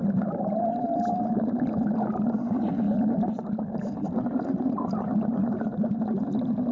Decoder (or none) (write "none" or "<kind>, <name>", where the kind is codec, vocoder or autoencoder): none